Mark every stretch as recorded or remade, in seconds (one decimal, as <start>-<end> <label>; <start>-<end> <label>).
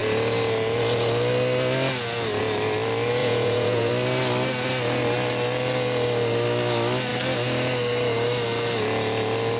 0.0-3.2 recorded; 3.2-3.9 remade; 3.9-9.6 recorded